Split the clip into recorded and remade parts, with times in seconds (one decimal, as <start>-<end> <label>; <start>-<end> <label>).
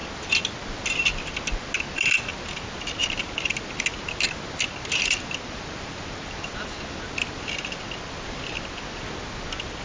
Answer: 0.0-9.8 recorded